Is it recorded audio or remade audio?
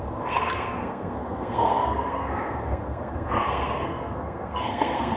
remade